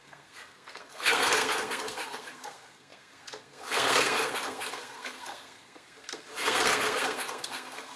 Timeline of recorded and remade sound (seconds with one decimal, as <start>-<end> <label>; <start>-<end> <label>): 0.0-8.0 remade